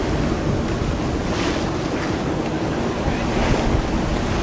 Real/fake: real